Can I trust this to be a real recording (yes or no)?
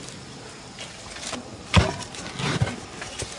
yes